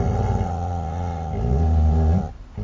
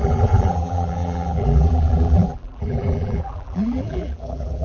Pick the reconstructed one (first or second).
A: second